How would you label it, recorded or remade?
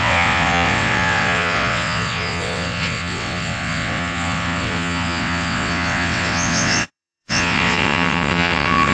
remade